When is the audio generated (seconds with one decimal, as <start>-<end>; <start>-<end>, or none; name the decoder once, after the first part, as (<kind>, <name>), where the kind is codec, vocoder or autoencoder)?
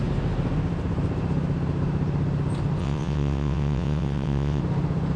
2.8-4.6 (vocoder, WaveNeXt)